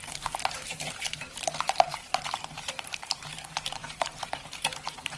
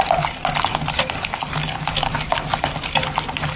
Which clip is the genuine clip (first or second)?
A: second